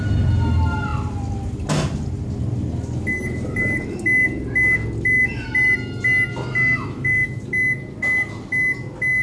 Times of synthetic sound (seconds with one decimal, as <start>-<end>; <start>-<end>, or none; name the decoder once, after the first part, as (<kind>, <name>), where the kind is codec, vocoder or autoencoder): 6.3-7.4 (autoencoder, DAC-VAE)